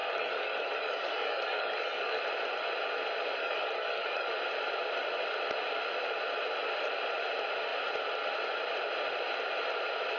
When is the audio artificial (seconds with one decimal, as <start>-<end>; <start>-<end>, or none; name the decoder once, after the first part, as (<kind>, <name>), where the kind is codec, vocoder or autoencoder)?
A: 0.0-2.2 (codec, DAC); 3.4-4.3